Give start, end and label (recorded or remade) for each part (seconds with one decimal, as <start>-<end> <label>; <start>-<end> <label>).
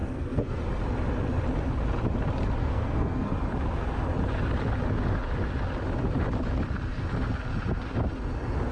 0.0-0.6 remade; 0.6-2.6 recorded; 2.6-3.3 remade; 3.3-8.7 recorded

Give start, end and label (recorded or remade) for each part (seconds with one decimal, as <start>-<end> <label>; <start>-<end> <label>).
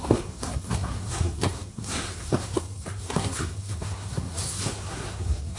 0.0-5.6 remade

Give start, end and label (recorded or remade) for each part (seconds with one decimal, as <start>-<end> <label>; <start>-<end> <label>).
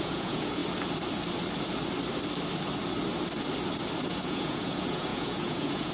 0.0-0.6 remade; 0.6-4.1 recorded; 4.1-5.9 remade